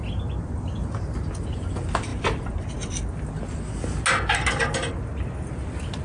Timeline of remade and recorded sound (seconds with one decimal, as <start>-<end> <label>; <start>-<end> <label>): 0.0-6.0 recorded